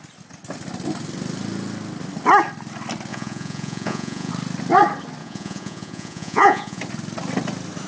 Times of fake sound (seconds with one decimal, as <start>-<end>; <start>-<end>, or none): 3.1-4.3; 5.2-6.8